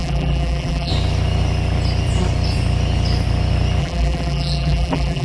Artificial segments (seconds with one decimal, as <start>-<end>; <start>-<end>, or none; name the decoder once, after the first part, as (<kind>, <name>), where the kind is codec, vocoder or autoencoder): 0.0-0.9 (vocoder, BigVGAN v2); 3.8-5.2